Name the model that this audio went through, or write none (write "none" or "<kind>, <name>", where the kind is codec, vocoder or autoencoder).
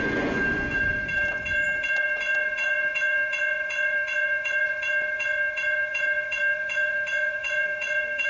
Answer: vocoder, Vocos